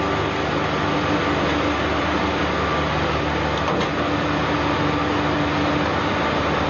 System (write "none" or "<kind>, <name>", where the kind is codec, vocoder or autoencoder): none